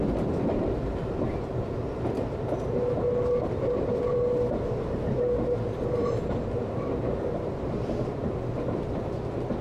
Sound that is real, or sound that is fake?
real